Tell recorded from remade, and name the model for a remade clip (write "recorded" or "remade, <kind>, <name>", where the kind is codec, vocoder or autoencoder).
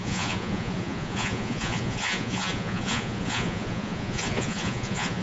remade, vocoder, Vocos